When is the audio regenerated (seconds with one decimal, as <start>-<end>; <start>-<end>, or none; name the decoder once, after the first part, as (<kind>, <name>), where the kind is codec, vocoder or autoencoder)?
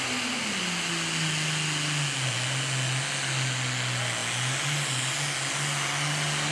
none